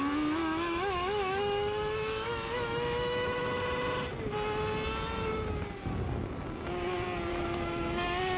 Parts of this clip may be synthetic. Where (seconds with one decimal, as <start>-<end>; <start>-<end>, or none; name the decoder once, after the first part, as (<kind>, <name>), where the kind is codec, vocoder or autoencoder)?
0.4-3.6 (autoencoder, DAC-VAE); 7.3-8.4